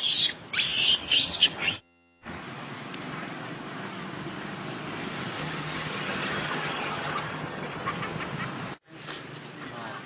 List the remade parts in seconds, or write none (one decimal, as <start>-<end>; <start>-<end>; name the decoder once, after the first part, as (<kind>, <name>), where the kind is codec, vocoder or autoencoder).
1.0-2.4 (vocoder, HiFi-GAN); 5.4-7.8